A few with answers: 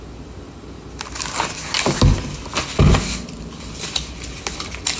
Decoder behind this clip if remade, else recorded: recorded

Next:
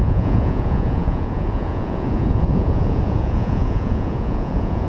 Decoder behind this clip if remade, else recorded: remade, vocoder, Vocos